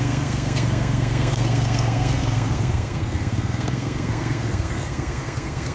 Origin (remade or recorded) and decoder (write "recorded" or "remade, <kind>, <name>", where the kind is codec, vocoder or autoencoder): remade, codec, SNAC